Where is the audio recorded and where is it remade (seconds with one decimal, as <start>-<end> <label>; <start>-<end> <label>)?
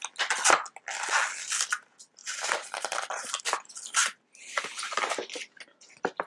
0.0-2.2 recorded; 2.2-3.4 remade; 3.4-4.0 recorded; 4.0-5.1 remade; 5.1-6.3 recorded